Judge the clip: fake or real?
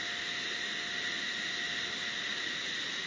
real